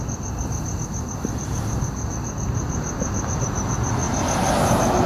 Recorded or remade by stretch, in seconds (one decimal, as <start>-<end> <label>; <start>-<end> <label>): 0.0-5.1 recorded